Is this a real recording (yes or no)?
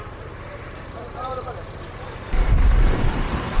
no